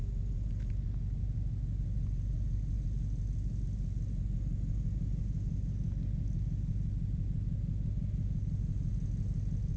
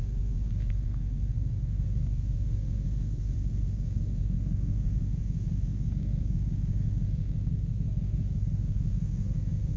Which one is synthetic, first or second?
second